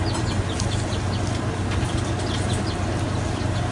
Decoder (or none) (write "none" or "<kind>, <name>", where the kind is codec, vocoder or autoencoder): none